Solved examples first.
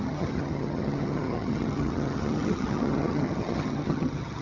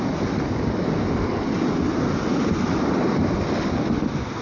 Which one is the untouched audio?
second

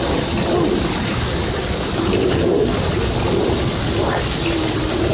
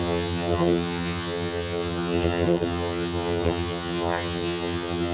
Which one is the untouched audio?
first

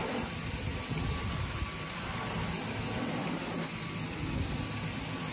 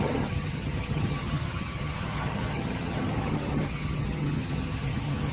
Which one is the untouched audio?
first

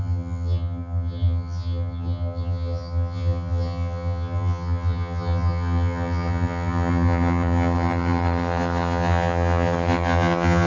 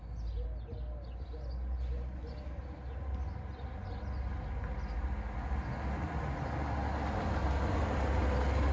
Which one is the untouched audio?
second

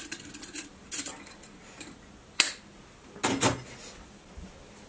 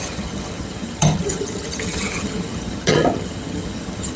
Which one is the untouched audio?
first